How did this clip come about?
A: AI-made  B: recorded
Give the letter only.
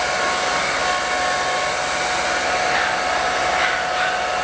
B